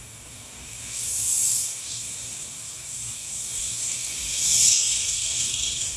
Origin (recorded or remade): remade